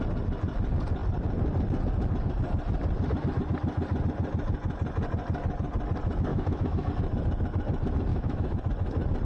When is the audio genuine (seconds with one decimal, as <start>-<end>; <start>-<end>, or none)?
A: 0.0-6.3; 6.9-8.1; 8.6-9.2